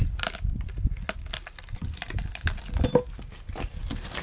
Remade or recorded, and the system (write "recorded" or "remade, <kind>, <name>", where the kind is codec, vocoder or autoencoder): recorded